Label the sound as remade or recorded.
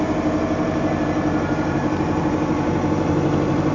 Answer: recorded